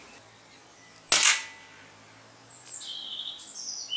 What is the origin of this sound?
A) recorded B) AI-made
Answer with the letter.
A